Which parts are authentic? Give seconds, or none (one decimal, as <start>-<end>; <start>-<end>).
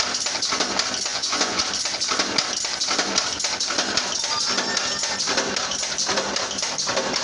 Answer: 0.0-1.1; 1.6-7.2